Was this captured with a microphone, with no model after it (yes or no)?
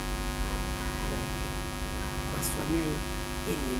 yes